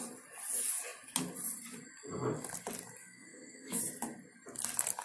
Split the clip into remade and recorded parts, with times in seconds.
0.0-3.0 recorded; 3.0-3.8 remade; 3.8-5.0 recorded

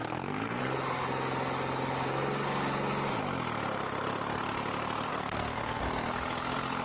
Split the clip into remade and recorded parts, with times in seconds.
0.0-0.6 remade; 0.6-5.1 recorded; 5.1-5.8 remade; 5.8-6.8 recorded

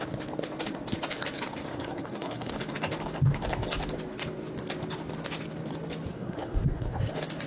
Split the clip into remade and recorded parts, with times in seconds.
0.0-1.7 recorded; 1.7-2.5 remade; 2.5-6.1 recorded; 6.1-7.1 remade; 7.1-7.5 recorded